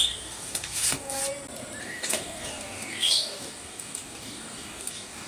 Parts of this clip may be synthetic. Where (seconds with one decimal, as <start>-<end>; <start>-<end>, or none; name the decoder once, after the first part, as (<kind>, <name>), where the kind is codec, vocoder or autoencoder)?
0.0-1.2 (codec, DAC); 1.8-5.3